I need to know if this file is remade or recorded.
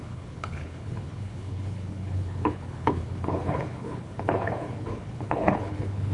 remade